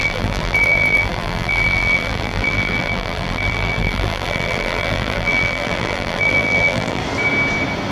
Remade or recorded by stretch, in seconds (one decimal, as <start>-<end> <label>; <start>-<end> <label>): 0.0-7.0 remade; 7.0-7.9 recorded